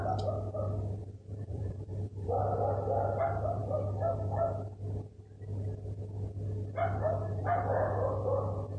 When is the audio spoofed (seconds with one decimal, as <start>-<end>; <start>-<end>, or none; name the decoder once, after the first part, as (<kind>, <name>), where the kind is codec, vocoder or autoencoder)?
1.0-2.4 (vocoder, BigVGAN v2)